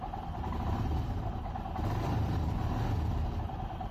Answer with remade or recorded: recorded